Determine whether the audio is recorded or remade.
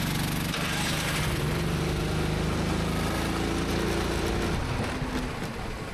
recorded